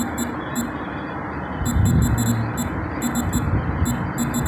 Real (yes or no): yes